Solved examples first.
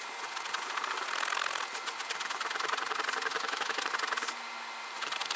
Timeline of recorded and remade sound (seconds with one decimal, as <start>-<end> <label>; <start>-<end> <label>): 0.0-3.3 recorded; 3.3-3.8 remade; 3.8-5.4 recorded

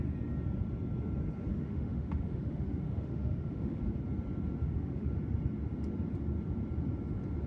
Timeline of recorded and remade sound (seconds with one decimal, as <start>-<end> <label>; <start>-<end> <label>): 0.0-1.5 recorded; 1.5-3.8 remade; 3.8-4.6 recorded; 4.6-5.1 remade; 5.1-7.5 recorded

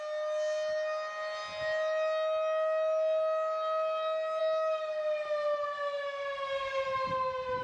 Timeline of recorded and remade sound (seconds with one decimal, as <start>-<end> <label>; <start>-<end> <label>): 0.0-7.6 recorded

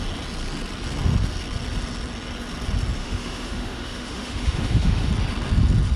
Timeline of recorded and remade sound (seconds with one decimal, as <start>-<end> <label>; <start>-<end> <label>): 0.0-3.0 recorded; 3.0-5.1 remade; 5.1-6.0 recorded